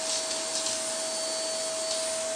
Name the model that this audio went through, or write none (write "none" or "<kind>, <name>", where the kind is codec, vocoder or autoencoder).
none